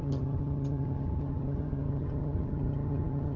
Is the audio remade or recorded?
remade